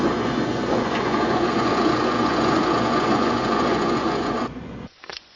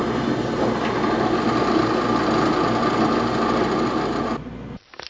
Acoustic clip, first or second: second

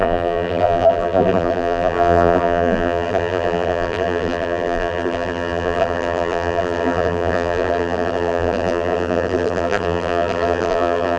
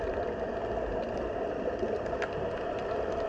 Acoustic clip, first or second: second